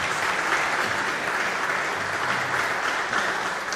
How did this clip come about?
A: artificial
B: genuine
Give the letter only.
B